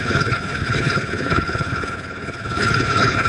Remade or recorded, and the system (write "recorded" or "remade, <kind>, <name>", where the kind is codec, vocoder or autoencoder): remade, codec, HILCodec